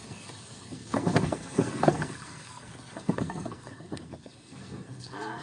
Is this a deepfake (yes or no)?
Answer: yes